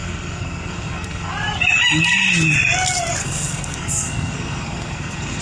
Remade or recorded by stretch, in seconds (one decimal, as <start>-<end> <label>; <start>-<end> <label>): 0.0-1.3 remade; 1.3-3.2 recorded; 3.2-5.4 remade